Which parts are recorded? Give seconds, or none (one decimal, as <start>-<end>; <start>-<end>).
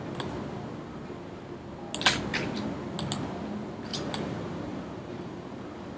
0.0-3.9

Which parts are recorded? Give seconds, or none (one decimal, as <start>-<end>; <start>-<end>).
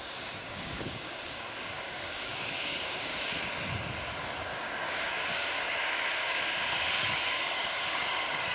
3.1-4.5